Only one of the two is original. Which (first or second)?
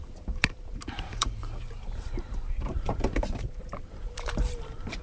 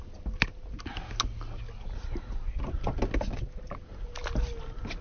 second